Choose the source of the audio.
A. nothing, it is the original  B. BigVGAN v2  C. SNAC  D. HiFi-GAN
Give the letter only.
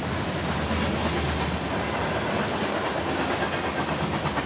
A